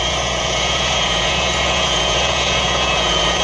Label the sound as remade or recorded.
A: remade